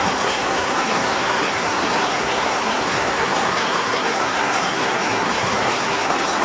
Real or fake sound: fake